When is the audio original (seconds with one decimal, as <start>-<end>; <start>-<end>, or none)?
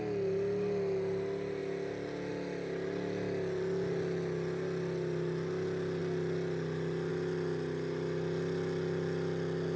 0.0-9.8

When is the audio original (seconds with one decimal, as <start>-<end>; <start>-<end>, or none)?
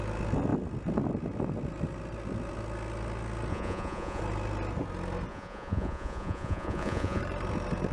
0.0-3.5; 4.2-5.3; 7.2-7.9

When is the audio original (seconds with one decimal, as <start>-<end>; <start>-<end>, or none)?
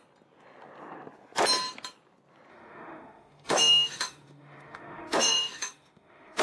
0.0-2.5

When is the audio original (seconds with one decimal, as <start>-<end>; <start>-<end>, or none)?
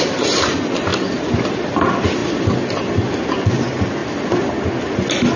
0.0-5.4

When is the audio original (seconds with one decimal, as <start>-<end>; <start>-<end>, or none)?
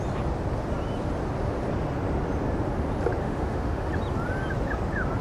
0.0-3.2; 3.9-5.2